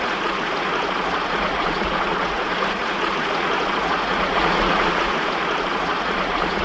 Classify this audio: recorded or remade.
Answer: remade